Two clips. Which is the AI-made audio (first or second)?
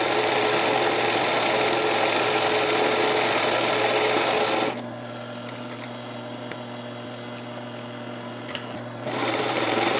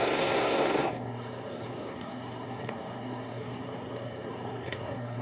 second